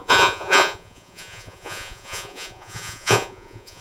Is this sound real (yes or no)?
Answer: no